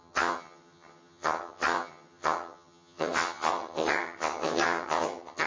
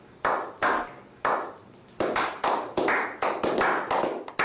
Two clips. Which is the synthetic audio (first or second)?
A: first